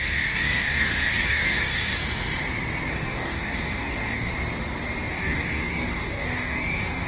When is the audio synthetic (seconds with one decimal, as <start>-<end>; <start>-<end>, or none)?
0.0-2.0; 2.9-4.3; 5.1-7.1